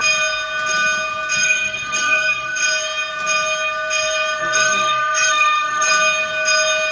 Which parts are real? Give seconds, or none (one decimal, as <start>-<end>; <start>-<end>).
0.0-1.4; 2.6-4.4; 5.9-6.9